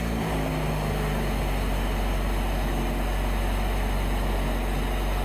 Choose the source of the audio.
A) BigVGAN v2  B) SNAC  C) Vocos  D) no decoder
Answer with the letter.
D